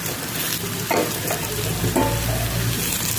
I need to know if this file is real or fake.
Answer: real